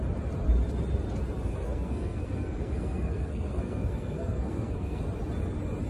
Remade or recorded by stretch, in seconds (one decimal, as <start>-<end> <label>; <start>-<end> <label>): 0.0-1.5 recorded; 1.5-5.0 remade; 5.0-5.9 recorded